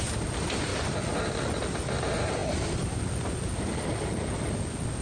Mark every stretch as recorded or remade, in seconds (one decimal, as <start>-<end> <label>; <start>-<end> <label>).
0.0-5.0 recorded